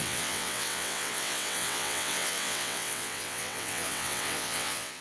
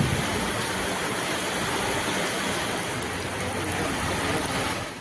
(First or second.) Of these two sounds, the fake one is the first